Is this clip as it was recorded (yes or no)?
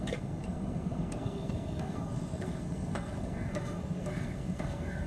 no